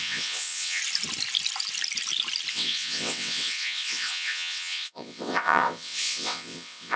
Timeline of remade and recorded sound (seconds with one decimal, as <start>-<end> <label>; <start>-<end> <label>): 0.0-0.8 remade; 0.8-2.5 recorded; 2.5-7.0 remade